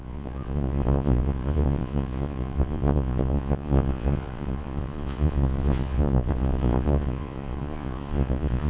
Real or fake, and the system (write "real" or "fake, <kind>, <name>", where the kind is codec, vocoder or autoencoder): fake, vocoder, Vocos